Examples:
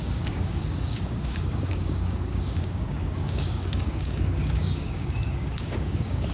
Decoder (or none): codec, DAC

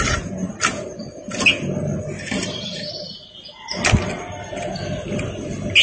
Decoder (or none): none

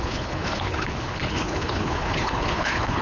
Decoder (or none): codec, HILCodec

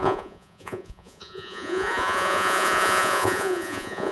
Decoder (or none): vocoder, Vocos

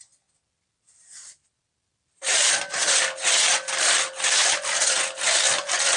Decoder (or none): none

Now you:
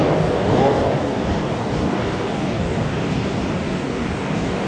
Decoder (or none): codec, DAC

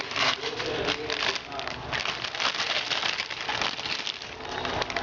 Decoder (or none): none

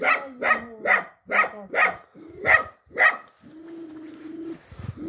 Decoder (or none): none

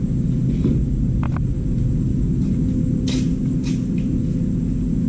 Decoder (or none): none